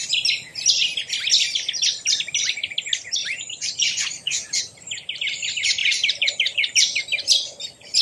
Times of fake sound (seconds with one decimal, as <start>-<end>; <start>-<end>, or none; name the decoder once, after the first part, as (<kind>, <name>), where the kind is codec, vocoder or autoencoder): 3.2-4.6 (vocoder, BigVGAN v2); 5.8-7.0